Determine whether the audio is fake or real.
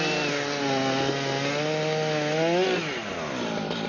real